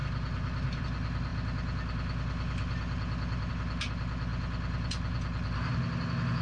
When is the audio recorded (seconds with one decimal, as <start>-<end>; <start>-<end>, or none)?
0.0-6.4